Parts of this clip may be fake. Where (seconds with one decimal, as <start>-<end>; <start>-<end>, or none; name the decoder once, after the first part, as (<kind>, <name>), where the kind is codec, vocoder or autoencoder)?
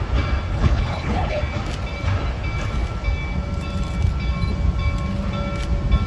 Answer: 0.5-1.4 (codec, HILCodec)